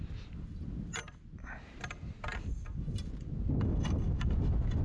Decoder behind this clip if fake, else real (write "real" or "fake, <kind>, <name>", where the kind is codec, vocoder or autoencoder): real